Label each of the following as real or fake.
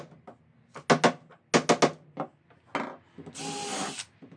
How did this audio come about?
real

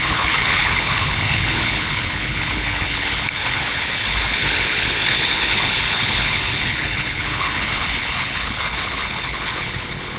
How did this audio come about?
fake